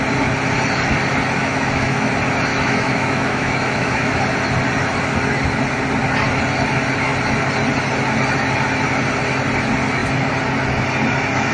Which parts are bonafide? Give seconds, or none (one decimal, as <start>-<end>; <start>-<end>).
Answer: 0.0-1.4; 2.1-2.5; 4.2-11.5